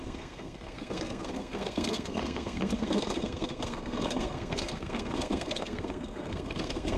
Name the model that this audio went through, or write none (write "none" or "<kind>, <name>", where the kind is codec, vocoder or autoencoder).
codec, SNAC